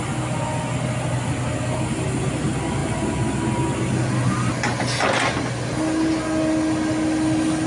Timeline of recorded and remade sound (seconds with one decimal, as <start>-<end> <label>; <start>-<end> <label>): 0.0-7.7 recorded